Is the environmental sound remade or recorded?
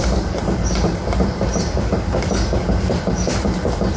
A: remade